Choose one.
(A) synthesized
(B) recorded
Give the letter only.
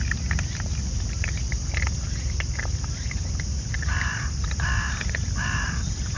B